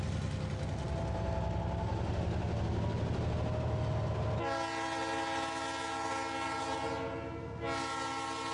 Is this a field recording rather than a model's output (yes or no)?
yes